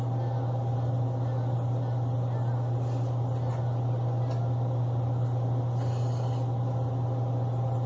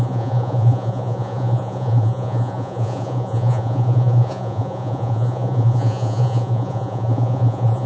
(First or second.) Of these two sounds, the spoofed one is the second